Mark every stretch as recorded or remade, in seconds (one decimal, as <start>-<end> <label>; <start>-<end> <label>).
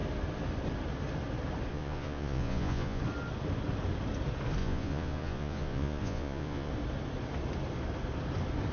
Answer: 0.0-1.7 recorded; 1.7-3.0 remade; 3.0-4.6 recorded; 4.6-6.7 remade; 6.7-8.7 recorded